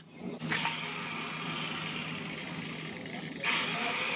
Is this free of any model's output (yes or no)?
yes